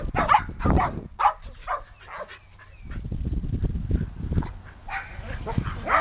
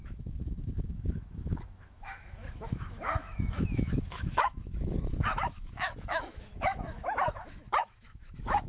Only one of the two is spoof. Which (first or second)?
second